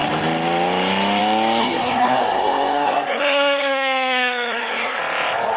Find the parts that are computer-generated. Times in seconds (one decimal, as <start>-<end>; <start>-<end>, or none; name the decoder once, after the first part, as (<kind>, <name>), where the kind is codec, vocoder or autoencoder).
1.6-5.0 (codec, SNAC)